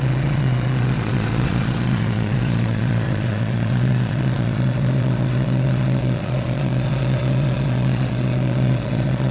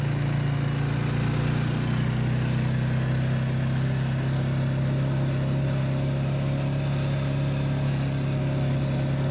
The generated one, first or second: first